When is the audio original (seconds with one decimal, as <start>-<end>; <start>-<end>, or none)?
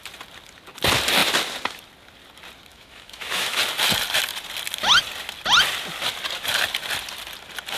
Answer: 0.0-2.7; 3.6-7.8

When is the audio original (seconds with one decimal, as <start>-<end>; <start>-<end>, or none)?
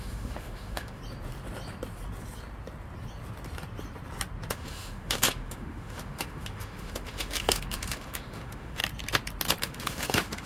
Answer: 1.0-4.5; 8.8-9.6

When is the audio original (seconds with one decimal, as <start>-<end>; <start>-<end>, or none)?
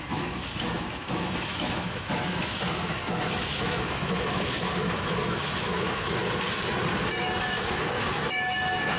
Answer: 6.2-7.2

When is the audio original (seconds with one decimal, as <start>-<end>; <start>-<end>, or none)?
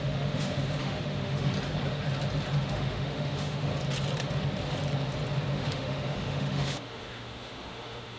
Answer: 1.5-2.6; 3.7-5.5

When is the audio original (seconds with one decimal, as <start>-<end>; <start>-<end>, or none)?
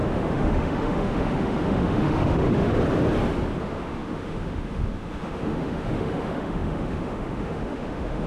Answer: 2.7-3.6